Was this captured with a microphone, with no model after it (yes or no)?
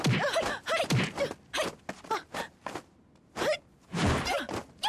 yes